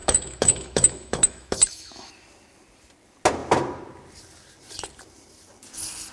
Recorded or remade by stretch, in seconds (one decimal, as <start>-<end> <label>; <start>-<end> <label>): 0.0-2.1 remade; 2.1-6.1 recorded